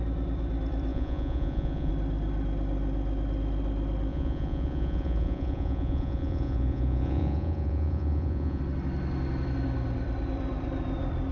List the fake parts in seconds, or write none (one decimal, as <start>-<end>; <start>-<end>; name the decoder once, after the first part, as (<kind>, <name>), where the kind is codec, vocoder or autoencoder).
0.9-1.9 (vocoder, Vocos); 4.1-8.6